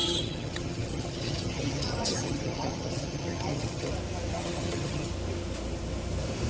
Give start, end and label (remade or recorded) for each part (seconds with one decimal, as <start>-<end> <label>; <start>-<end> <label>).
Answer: 0.0-3.9 remade; 3.9-4.3 recorded; 4.3-5.1 remade; 5.1-6.5 recorded